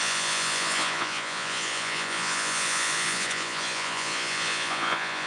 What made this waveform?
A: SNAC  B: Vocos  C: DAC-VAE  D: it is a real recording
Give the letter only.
B